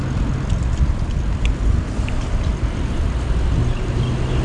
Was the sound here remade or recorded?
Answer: recorded